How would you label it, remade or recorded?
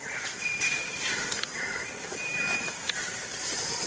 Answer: recorded